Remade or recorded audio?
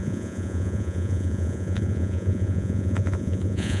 remade